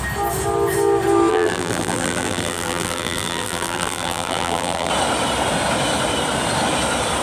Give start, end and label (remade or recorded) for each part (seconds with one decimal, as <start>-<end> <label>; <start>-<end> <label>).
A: 0.0-1.3 recorded; 1.3-4.9 remade; 4.9-7.2 recorded